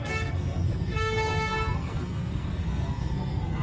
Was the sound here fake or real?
fake